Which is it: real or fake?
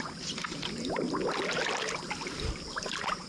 real